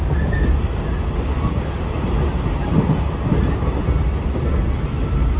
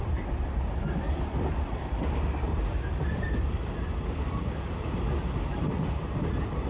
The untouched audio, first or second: first